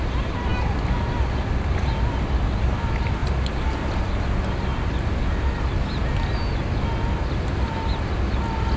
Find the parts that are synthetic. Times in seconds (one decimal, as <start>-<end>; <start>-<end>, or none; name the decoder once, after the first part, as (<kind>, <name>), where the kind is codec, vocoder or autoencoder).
none